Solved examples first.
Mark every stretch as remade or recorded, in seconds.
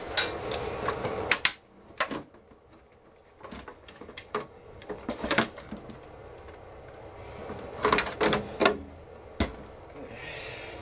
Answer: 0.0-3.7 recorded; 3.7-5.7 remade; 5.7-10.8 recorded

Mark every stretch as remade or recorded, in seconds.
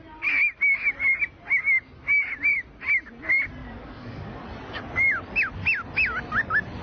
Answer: 0.0-3.6 recorded; 3.6-4.4 remade; 4.4-6.8 recorded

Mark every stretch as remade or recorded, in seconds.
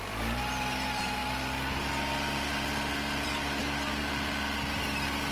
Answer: 0.0-3.3 recorded; 3.3-4.1 remade; 4.1-5.3 recorded